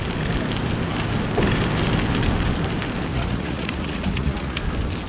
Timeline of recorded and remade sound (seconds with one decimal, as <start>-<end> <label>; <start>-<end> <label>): 0.0-3.1 recorded; 3.1-4.6 remade; 4.6-5.1 recorded